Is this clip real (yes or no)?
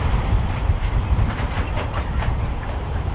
no